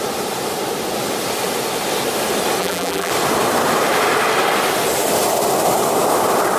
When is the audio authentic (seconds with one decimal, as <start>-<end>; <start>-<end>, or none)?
0.0-2.6; 3.1-6.6